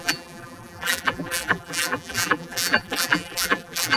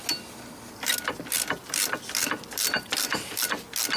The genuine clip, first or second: second